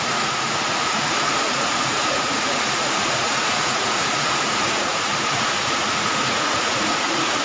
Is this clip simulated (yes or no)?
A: yes